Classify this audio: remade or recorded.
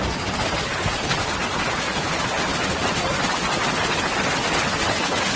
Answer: recorded